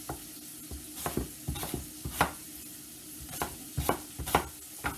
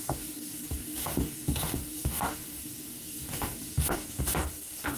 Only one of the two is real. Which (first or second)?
first